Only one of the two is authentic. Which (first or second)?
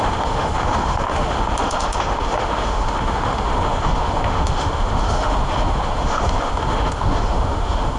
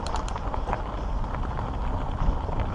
second